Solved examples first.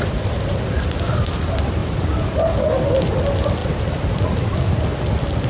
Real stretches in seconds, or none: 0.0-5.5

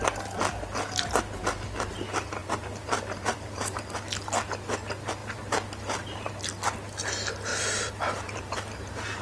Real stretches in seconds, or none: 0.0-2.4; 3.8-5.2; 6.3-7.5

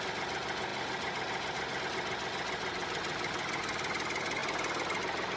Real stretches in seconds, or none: 0.0-5.4

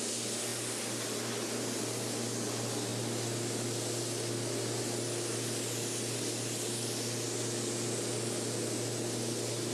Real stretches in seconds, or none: 0.0-9.7

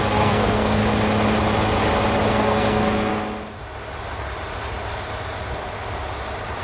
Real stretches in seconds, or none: 0.8-2.3; 3.1-6.6

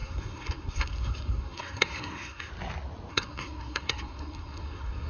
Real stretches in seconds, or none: 2.5-3.1

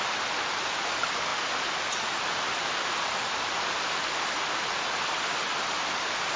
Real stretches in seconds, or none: 0.0-6.4

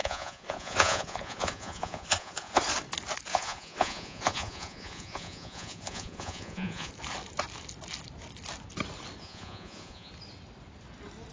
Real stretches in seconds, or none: 2.6-3.3; 6.9-9.2; 10.1-11.3